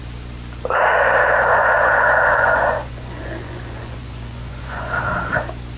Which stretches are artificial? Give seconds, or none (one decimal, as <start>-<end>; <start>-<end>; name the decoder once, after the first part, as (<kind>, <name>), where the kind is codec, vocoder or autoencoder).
1.5-5.0 (vocoder, Vocos)